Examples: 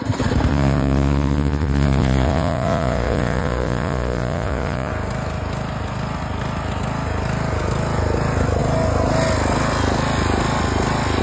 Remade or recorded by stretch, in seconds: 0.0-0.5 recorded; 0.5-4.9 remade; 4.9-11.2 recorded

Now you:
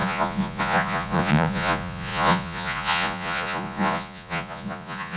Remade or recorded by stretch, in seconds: 0.0-5.2 remade

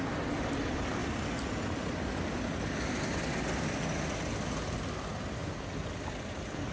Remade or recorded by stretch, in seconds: 0.0-6.7 recorded

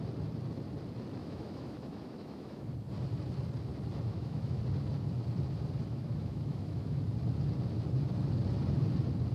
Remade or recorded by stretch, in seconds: 0.0-1.2 recorded; 1.2-2.7 remade; 2.7-4.1 recorded; 4.1-4.6 remade; 4.6-5.9 recorded; 5.9-7.0 remade; 7.0-9.3 recorded

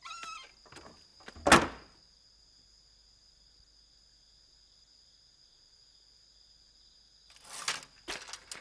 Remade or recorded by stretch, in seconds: 0.0-8.6 recorded

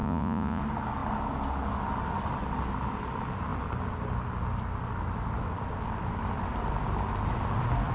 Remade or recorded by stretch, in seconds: 0.0-0.6 remade; 0.6-7.9 recorded

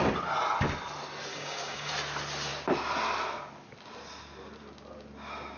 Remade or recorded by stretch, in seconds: 0.0-1.3 recorded; 1.3-1.9 remade; 1.9-5.6 recorded